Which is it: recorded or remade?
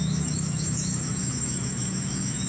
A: remade